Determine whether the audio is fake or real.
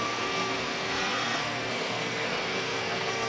fake